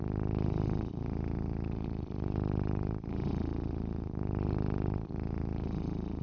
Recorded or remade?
recorded